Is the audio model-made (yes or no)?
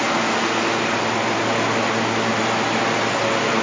no